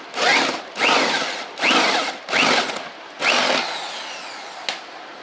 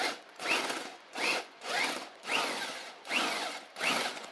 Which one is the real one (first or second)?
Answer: first